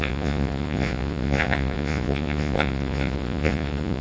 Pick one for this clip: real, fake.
fake